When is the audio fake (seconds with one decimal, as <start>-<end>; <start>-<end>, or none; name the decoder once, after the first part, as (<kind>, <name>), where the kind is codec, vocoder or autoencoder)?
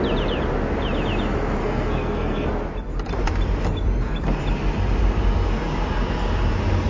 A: 1.6-2.5 (codec, SNAC)